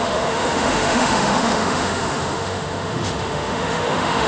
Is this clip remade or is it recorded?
remade